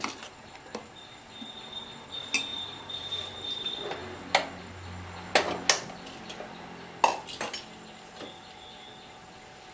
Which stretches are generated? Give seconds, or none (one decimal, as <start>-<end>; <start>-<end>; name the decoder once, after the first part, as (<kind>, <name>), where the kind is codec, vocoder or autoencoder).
2.5-3.5 (vocoder, BigVGAN v2)